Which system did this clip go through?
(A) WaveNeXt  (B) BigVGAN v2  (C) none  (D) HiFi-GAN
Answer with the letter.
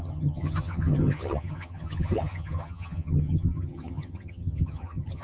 D